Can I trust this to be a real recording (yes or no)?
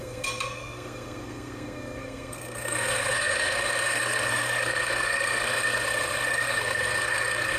no